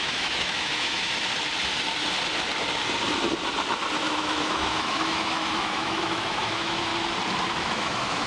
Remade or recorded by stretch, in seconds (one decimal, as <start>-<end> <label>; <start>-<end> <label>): 0.0-1.1 remade; 1.1-4.0 recorded; 4.0-6.9 remade; 6.9-7.5 recorded; 7.5-8.3 remade